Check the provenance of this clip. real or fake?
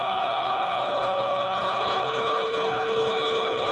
fake